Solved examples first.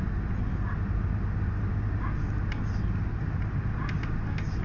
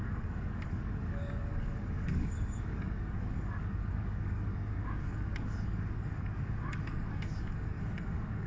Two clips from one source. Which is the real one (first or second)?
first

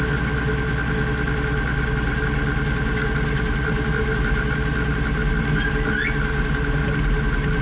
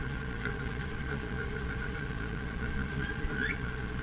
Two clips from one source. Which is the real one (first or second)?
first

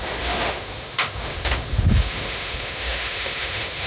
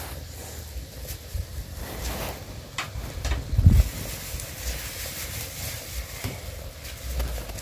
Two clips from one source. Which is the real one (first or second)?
second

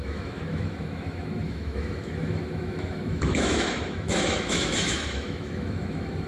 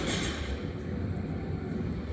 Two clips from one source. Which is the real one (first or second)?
second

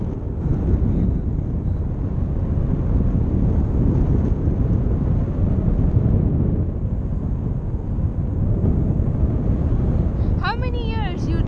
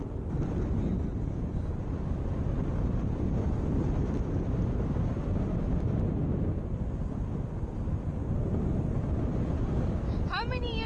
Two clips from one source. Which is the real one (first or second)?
first